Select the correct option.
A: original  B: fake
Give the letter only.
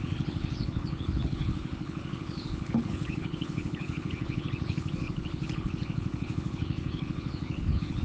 B